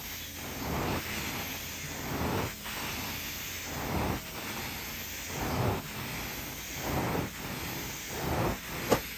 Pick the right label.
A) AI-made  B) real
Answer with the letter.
B